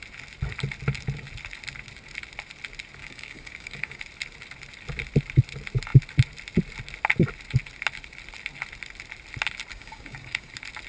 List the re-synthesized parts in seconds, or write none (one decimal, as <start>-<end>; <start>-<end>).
3.0-4.0; 9.7-10.5